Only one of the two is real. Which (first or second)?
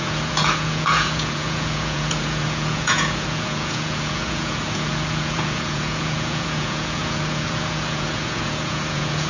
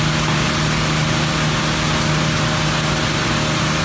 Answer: second